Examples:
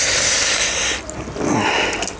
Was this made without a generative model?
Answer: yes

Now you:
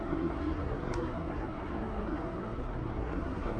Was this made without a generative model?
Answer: no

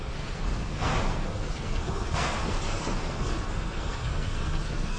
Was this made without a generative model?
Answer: no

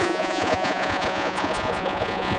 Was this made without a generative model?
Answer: no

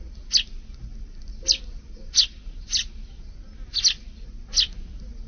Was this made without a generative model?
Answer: yes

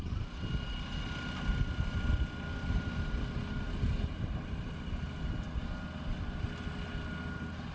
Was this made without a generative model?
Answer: yes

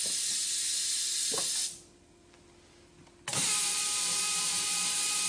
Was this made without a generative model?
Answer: yes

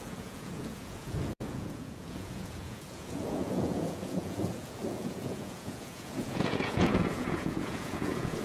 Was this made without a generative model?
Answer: no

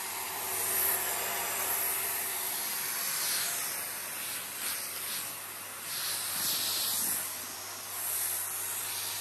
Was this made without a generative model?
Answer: yes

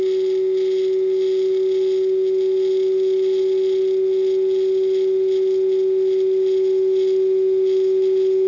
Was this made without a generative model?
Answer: yes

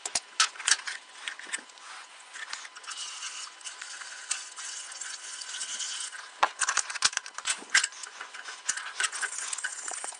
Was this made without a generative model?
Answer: no